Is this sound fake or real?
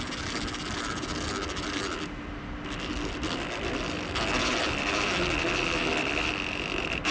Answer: real